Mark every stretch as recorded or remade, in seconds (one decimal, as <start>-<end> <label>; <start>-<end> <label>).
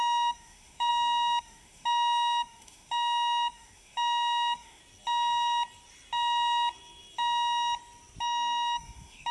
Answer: 0.0-0.9 remade; 0.9-1.4 recorded; 1.4-4.8 remade; 4.8-8.2 recorded; 8.2-9.3 remade